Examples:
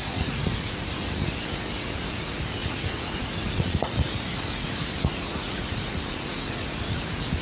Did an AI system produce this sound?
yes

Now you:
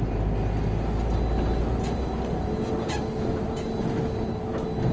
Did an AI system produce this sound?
no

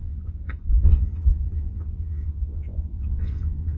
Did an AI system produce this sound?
yes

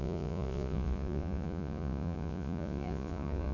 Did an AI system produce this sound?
yes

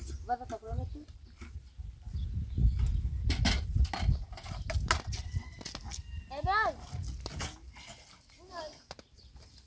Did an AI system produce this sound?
no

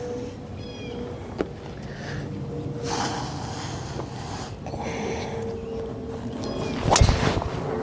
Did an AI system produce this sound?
no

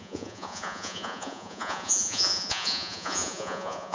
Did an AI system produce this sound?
yes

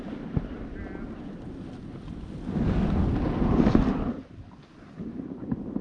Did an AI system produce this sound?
no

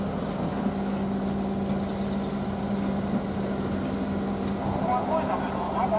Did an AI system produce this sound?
no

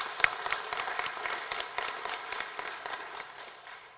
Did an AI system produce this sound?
no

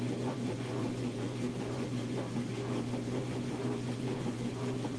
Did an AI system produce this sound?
yes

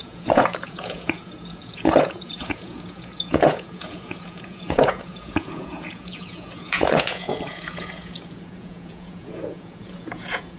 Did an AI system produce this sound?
yes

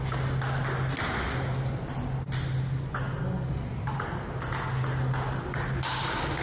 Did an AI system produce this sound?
no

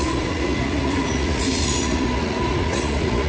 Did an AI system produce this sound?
yes